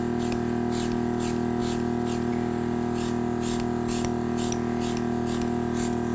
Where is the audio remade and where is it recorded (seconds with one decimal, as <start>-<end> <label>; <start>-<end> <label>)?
0.0-6.1 recorded